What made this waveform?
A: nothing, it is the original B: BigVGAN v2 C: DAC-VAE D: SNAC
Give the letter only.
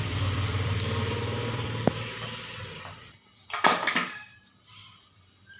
B